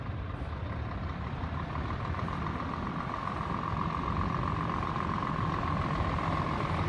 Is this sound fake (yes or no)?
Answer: yes